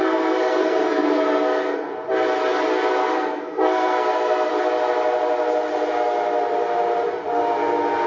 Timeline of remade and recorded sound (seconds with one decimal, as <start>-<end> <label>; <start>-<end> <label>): 0.0-1.9 remade; 1.9-2.9 recorded; 2.9-4.5 remade; 4.5-8.1 recorded

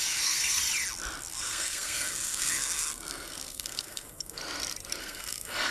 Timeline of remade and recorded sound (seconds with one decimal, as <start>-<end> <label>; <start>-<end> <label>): 0.0-0.6 remade; 0.6-1.3 recorded; 1.3-4.4 remade; 4.4-5.0 recorded; 5.0-5.7 remade

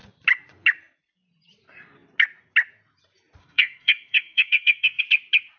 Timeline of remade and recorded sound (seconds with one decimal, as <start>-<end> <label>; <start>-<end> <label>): 0.0-3.4 recorded; 3.4-5.0 remade; 5.0-5.6 recorded

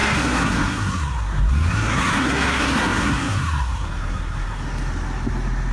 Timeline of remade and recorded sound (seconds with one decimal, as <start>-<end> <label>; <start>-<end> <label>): 0.0-4.6 remade; 4.6-5.7 recorded

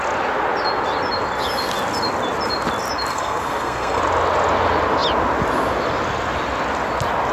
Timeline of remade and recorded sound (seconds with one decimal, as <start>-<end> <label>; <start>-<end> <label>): 0.0-3.1 recorded; 3.1-4.0 remade; 4.0-7.3 recorded